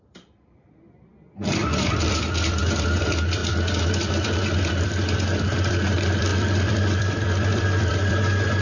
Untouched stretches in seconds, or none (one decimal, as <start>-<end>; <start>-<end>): 3.4-3.9